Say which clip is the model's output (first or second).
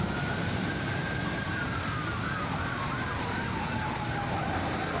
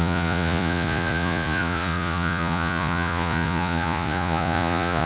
second